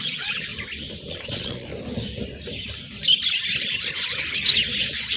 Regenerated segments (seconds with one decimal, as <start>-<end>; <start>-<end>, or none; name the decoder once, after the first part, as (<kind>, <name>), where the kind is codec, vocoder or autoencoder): 0.0-0.5 (vocoder, Vocos); 1.1-1.7; 4.8-5.2